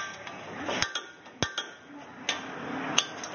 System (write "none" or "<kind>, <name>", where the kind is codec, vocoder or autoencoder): none